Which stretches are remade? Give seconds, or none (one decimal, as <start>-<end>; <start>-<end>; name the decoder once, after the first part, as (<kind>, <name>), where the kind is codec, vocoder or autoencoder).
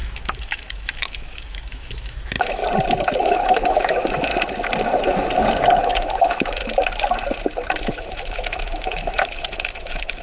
0.0-2.6 (autoencoder, DAC-VAE); 3.2-4.3; 5.8-6.6; 7.8-10.2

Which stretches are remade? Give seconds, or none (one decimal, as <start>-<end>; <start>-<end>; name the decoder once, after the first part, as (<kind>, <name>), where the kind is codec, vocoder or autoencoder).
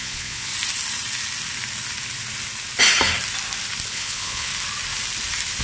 0.0-0.5 (vocoder, Vocos); 3.9-4.5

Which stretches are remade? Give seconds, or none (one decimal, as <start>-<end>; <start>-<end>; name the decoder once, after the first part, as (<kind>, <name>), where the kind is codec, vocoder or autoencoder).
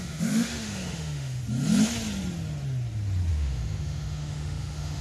0.0-1.4 (autoencoder, DAC-VAE); 3.3-5.0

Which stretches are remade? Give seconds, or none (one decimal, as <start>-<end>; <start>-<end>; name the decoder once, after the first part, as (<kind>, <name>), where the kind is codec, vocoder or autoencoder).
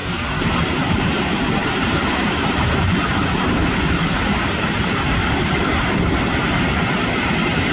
0.0-1.2 (vocoder, BigVGAN v2); 1.6-6.0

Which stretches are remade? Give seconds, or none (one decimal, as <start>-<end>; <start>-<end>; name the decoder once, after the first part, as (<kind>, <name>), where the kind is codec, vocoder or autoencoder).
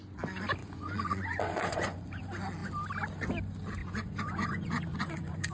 0.6-2.2 (vocoder, Vocos); 3.8-5.5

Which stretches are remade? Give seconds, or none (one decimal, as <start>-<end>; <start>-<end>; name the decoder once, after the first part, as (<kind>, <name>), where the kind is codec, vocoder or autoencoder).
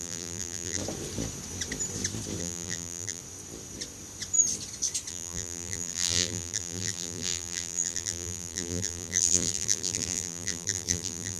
0.0-0.8 (vocoder, BigVGAN v2); 2.4-3.2; 5.1-11.4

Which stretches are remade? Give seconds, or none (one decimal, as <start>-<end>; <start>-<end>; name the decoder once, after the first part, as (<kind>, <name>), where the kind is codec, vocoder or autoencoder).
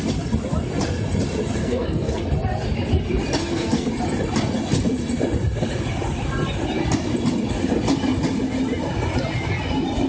1.6-2.2 (codec, SNAC); 3.4-3.9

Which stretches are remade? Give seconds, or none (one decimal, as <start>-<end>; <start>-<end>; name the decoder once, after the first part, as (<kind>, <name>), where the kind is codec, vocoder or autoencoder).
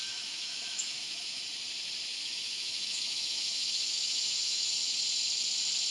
0.0-1.4 (autoencoder, DAC-VAE); 2.1-5.0